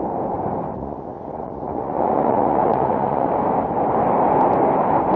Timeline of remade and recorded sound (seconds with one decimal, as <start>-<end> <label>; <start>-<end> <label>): 0.0-0.7 recorded; 0.7-3.3 remade; 3.3-5.2 recorded